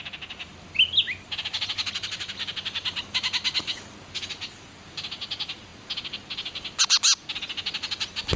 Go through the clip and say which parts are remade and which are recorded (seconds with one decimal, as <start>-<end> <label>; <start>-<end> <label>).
0.0-8.4 recorded